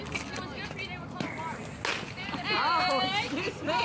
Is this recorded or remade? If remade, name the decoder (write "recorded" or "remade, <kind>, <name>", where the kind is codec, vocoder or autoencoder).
recorded